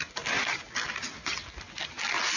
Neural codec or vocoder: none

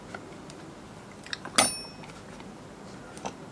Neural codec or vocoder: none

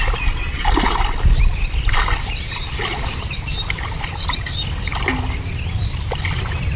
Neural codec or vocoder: none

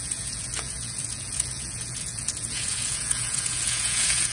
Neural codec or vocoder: vocoder, Vocos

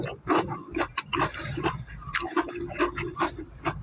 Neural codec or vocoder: none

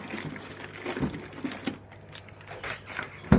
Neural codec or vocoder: none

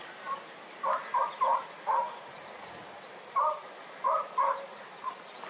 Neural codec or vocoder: none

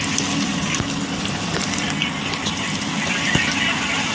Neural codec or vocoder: none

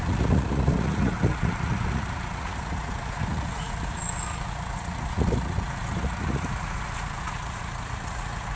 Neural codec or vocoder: vocoder, Vocos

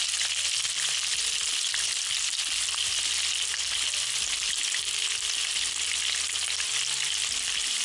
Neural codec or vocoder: none